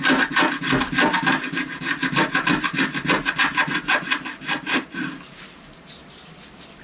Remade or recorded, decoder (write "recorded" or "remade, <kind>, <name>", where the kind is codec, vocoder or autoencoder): recorded